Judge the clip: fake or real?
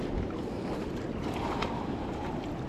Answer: real